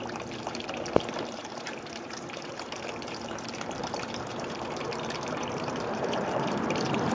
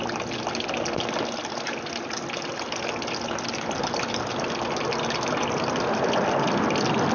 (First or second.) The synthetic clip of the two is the first